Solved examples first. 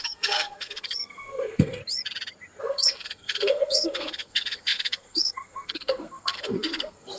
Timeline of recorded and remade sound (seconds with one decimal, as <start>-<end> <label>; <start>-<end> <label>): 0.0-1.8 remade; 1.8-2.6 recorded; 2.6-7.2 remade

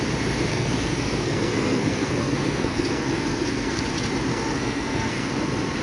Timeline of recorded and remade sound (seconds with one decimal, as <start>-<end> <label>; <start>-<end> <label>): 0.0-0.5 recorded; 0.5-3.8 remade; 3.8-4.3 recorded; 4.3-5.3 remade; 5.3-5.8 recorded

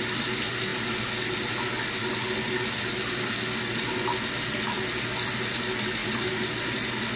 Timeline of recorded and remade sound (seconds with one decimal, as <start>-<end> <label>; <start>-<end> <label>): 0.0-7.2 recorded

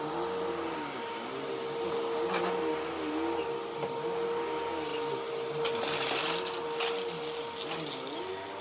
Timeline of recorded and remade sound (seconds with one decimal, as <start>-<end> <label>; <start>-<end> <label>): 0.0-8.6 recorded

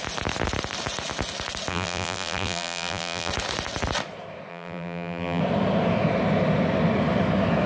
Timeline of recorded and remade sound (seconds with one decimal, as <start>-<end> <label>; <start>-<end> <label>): 0.0-1.7 recorded; 1.7-3.3 remade; 3.3-4.5 recorded; 4.5-5.4 remade; 5.4-7.7 recorded